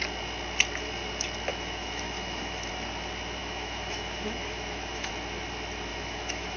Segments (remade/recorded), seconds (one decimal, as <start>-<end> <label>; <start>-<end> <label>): 0.0-1.5 recorded; 1.5-2.7 remade; 2.7-3.4 recorded; 3.4-5.1 remade; 5.1-5.9 recorded; 5.9-6.6 remade